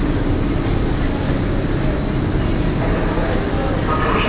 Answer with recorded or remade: recorded